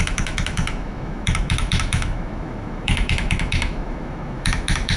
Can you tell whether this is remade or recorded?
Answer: remade